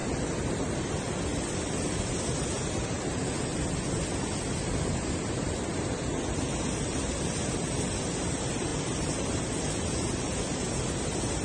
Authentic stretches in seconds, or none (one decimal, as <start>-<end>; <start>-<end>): 0.8-1.3; 1.9-11.4